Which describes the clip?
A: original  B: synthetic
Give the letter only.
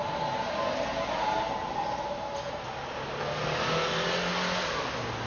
A